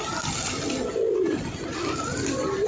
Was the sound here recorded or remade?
recorded